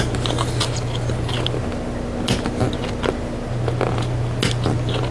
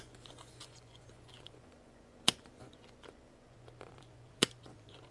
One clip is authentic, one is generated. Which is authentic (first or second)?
first